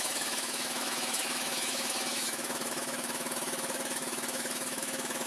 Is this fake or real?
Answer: fake